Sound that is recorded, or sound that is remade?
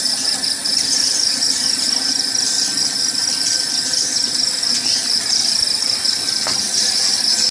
remade